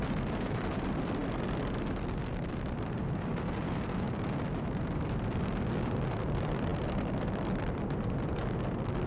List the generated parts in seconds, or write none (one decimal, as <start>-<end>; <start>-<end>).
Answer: 0.0-3.3; 4.1-9.1